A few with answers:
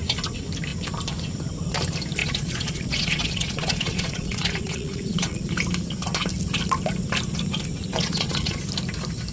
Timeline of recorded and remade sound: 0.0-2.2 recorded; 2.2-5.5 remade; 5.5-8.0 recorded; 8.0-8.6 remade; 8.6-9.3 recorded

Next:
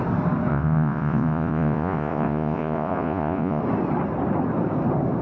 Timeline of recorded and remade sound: 0.0-0.5 recorded; 0.5-3.6 remade; 3.6-5.2 recorded

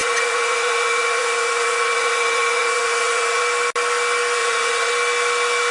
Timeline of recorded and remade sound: 0.0-3.4 remade; 3.4-4.4 recorded; 4.4-4.9 remade; 4.9-5.7 recorded

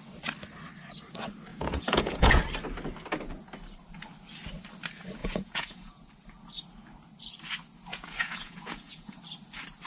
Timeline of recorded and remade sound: 0.0-1.5 recorded; 1.5-2.4 remade; 2.4-5.2 recorded; 5.2-6.1 remade; 6.1-7.9 recorded; 7.9-9.2 remade; 9.2-9.9 recorded

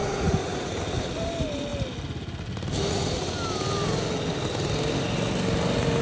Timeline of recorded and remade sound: 0.0-0.8 remade; 0.8-6.0 recorded

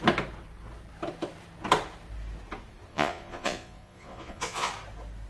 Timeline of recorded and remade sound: 0.0-2.9 recorded; 2.9-4.7 remade; 4.7-5.3 recorded

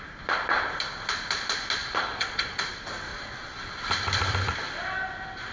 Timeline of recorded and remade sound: 0.0-1.8 recorded; 1.8-2.6 remade; 2.6-3.1 recorded; 3.1-3.8 remade; 3.8-5.5 recorded